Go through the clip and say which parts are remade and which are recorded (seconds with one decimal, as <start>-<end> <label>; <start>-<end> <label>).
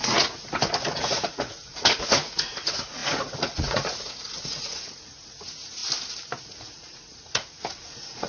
0.0-5.8 remade; 5.8-6.4 recorded; 6.4-8.3 remade